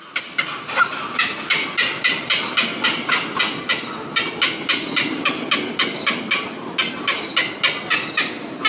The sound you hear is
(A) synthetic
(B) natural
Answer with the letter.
B